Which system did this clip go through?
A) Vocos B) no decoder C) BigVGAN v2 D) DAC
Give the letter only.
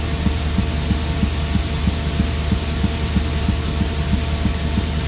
B